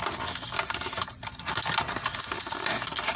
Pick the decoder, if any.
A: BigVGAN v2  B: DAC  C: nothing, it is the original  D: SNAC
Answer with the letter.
C